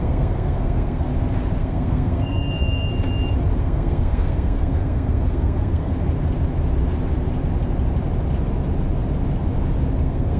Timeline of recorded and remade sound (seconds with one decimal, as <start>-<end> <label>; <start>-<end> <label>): 0.0-1.1 remade; 1.1-1.6 recorded; 1.6-2.9 remade; 2.9-3.6 recorded; 3.6-5.9 remade; 5.9-10.0 recorded; 10.0-10.4 remade